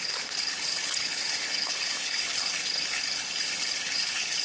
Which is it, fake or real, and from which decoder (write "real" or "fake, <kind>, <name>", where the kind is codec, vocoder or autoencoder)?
fake, codec, HILCodec